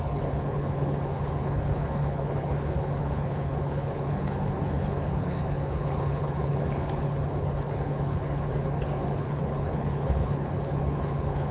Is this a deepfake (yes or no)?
yes